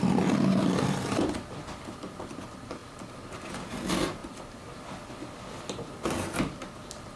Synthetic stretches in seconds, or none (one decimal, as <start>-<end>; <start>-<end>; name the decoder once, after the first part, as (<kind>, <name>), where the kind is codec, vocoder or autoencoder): 0.0-2.8 (vocoder, BigVGAN v2); 3.7-7.2